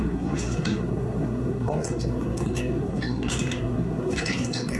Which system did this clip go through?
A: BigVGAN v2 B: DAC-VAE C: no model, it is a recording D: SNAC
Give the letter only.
D